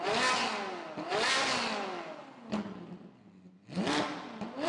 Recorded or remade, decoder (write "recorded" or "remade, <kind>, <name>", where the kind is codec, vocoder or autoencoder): recorded